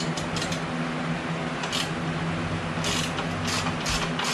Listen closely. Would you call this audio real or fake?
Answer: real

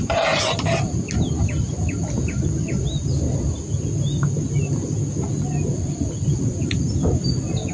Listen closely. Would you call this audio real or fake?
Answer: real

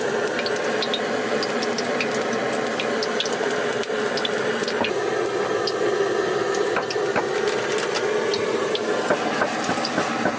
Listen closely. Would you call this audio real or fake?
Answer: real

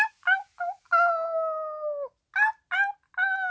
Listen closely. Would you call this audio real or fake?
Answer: real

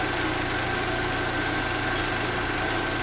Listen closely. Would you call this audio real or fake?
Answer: real